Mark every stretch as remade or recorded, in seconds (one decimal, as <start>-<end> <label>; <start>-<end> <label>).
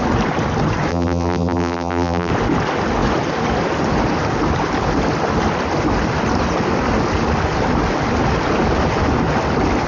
0.0-0.9 recorded; 0.9-2.3 remade; 2.3-9.9 recorded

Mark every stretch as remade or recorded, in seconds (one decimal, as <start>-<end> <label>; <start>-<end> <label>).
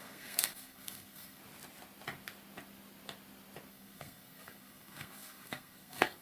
0.0-1.4 remade; 1.4-3.7 recorded; 3.7-6.2 remade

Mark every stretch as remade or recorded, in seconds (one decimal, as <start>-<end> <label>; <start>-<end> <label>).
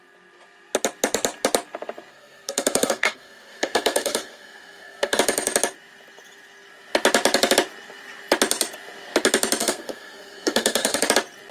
0.0-2.1 recorded; 2.1-5.2 remade; 5.2-9.6 recorded; 9.6-11.0 remade; 11.0-11.5 recorded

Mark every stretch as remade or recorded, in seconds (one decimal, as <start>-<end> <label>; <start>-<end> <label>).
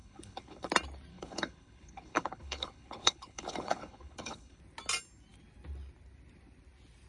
0.0-0.7 remade; 0.7-1.1 recorded; 1.1-4.6 remade; 4.6-7.1 recorded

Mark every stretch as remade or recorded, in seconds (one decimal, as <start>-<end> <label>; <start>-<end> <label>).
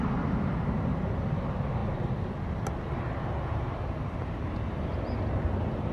0.0-5.9 recorded